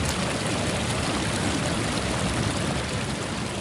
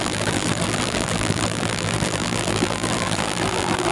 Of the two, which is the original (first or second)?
first